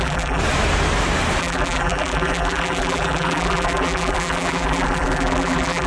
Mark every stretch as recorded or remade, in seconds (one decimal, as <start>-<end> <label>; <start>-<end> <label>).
0.0-0.4 remade; 0.4-1.4 recorded; 1.4-5.9 remade